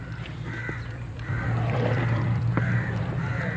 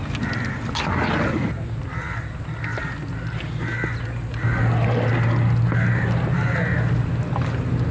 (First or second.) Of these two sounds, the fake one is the first